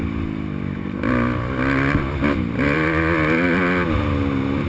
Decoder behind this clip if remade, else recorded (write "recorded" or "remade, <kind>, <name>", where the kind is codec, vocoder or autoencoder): recorded